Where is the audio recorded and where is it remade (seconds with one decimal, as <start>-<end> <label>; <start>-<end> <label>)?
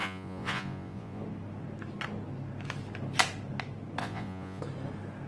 0.0-1.2 remade; 1.2-4.0 recorded; 4.0-4.6 remade; 4.6-5.3 recorded